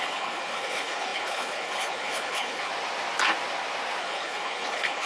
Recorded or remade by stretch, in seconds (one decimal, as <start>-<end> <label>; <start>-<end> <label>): 0.0-2.7 remade; 2.7-4.0 recorded; 4.0-5.0 remade